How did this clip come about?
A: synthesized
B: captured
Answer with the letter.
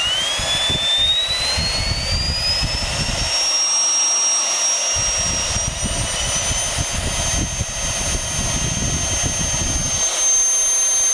B